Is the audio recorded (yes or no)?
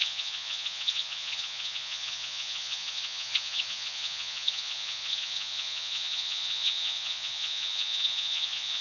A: no